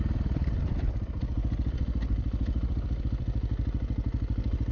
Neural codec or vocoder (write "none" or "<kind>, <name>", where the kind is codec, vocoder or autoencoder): none